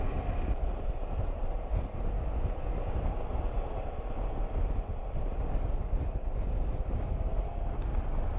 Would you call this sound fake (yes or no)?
no